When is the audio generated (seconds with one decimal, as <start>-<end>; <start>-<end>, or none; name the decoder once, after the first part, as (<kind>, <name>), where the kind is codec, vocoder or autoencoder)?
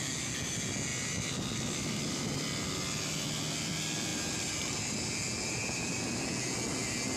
0.9-1.9 (vocoder, BigVGAN v2); 4.1-6.2